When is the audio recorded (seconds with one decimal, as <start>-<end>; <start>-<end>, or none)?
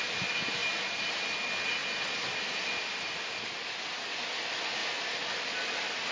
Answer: 0.0-6.1